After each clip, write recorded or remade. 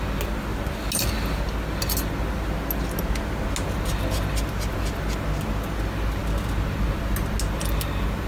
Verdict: recorded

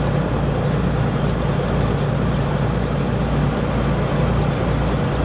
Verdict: recorded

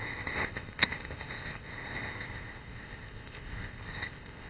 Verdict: remade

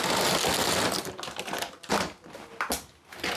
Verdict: recorded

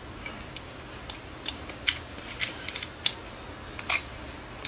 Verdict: remade